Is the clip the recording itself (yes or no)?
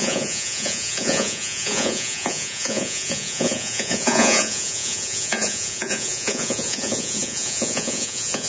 no